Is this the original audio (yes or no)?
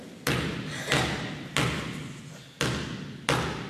yes